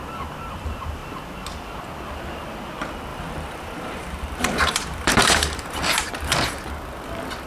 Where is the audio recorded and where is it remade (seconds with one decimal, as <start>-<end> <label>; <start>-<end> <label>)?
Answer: 0.0-3.1 recorded; 3.1-6.1 remade; 6.1-7.5 recorded